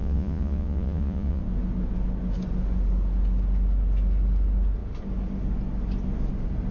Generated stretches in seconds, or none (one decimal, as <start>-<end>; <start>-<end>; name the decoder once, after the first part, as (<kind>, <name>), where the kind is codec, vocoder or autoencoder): 0.0-1.4 (vocoder, Vocos)